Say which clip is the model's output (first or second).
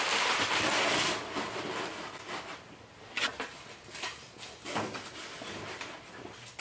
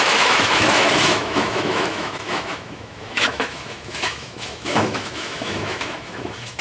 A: second